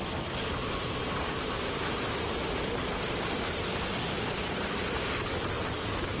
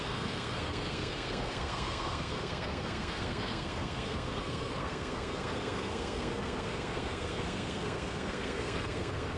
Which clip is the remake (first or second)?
second